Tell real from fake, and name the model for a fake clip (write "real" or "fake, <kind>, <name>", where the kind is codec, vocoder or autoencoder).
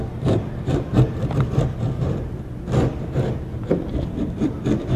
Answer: fake, vocoder, BigVGAN v2